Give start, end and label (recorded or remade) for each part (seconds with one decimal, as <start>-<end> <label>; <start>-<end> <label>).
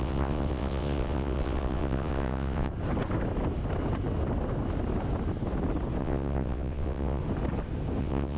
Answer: 0.0-2.7 remade; 2.7-6.0 recorded; 6.0-7.2 remade; 7.2-8.0 recorded; 8.0-8.4 remade